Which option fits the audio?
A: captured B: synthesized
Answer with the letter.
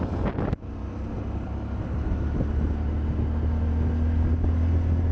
A